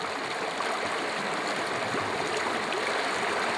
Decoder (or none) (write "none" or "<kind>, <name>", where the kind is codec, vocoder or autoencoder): none